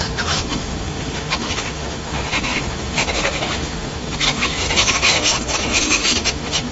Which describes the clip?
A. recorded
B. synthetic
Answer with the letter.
B